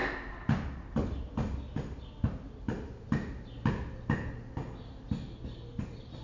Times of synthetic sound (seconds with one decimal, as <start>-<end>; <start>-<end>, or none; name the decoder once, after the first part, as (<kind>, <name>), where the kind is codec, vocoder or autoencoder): none